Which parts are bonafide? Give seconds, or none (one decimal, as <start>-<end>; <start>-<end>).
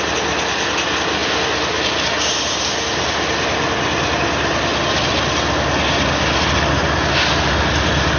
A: 0.0-8.2